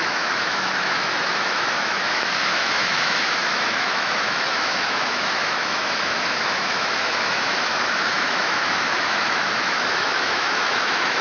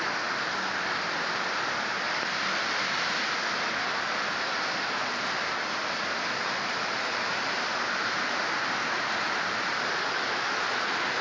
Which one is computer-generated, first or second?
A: first